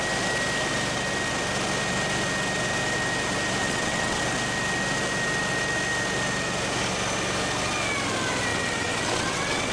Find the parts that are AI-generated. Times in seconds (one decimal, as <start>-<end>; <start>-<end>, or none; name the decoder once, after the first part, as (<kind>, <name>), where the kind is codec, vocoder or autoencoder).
3.6-4.2 (vocoder, WaveNeXt); 8.5-9.7